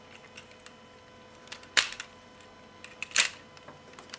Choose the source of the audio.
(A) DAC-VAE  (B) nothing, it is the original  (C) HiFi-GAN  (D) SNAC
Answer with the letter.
B